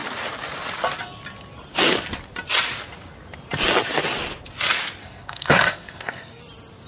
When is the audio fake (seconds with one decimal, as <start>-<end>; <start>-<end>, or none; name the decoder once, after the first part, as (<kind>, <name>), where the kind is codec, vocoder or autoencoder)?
5.0-6.4 (codec, SNAC)